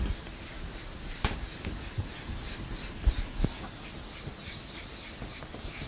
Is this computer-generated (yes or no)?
no